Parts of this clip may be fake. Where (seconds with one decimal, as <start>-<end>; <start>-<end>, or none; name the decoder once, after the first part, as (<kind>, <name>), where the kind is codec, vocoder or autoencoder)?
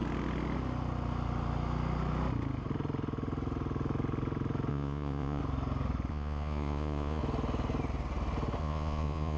4.7-5.4 (vocoder, Vocos); 6.1-7.2; 8.6-9.4